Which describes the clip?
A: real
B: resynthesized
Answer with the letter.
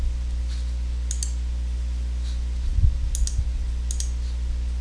A